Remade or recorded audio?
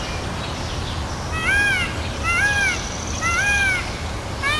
recorded